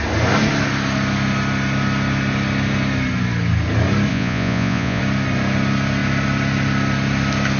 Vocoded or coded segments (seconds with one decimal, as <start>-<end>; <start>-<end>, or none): 4.1-5.0